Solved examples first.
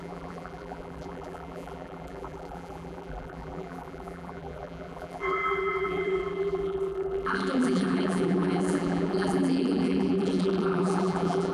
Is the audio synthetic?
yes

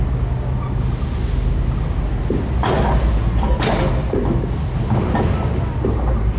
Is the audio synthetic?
no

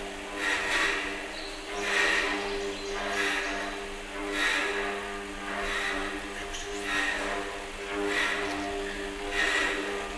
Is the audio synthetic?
no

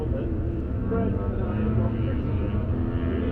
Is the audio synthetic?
no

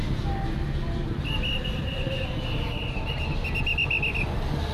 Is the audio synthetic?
no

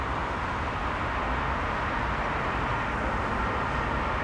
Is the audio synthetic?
no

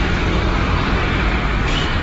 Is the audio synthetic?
yes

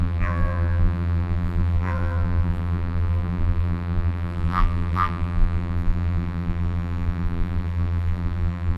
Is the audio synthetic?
yes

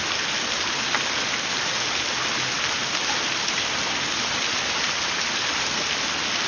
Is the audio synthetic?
no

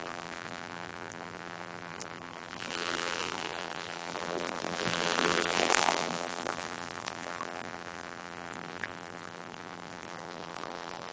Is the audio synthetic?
yes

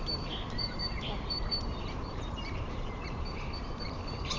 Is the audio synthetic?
yes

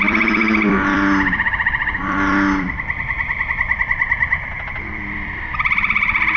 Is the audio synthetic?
yes